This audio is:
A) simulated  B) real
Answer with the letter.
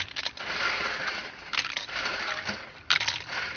A